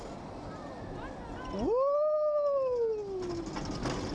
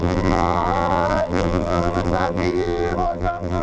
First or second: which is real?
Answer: first